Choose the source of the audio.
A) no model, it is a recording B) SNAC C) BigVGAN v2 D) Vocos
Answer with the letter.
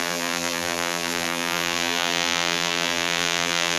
C